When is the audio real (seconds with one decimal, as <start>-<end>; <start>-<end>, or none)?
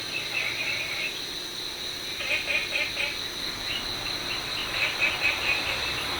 0.0-2.6; 3.3-4.6; 5.6-6.2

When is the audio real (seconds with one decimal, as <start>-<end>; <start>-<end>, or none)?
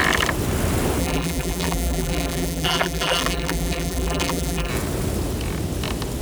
0.0-1.0; 4.7-6.2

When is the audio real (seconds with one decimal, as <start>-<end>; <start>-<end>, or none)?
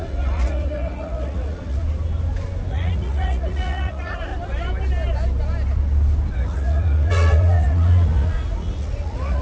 1.8-2.7; 4.3-6.3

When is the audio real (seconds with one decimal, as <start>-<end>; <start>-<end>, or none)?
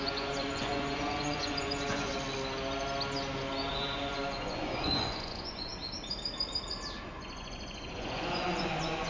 2.1-3.7; 5.7-7.0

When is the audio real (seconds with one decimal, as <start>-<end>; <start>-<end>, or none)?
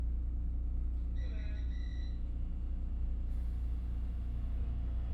0.0-5.1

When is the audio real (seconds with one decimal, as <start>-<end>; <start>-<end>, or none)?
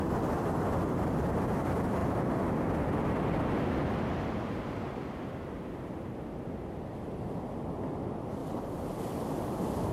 0.0-9.9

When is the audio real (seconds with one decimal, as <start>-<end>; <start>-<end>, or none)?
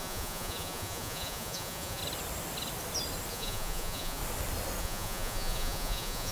2.0-3.3; 4.2-4.8